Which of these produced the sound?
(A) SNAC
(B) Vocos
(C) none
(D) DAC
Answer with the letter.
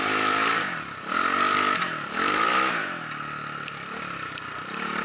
C